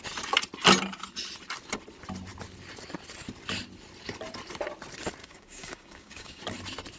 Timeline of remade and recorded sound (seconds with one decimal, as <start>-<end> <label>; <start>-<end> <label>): 0.0-5.2 recorded; 5.2-6.4 remade; 6.4-7.0 recorded